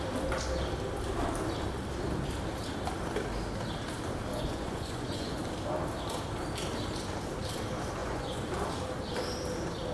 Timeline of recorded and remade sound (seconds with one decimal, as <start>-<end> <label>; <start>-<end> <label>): 0.0-4.3 recorded; 4.3-5.4 remade; 5.4-8.0 recorded; 8.0-8.5 remade; 8.5-9.9 recorded